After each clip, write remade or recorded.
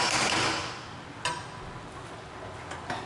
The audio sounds recorded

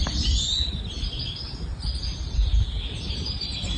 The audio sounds recorded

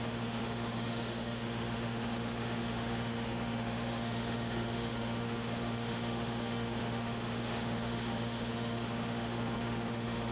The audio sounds remade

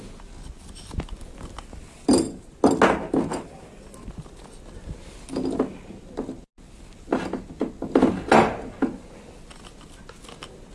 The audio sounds recorded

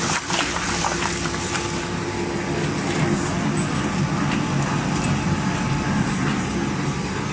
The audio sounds recorded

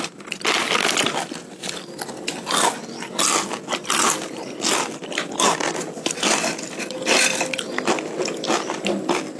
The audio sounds recorded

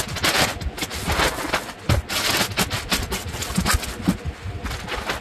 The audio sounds recorded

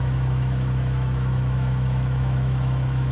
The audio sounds remade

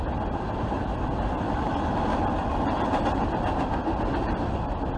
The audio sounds recorded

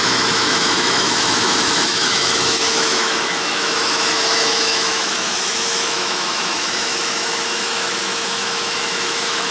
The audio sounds remade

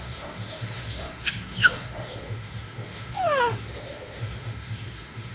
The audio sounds remade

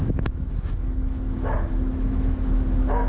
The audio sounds remade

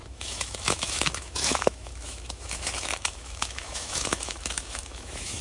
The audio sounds remade